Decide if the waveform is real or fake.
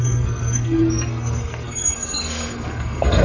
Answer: fake